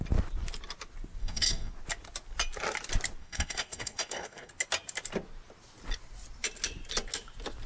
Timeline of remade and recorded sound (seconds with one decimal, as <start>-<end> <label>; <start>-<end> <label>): 0.0-1.2 recorded; 1.2-1.7 remade; 1.7-3.2 recorded; 3.2-4.5 remade; 4.5-7.7 recorded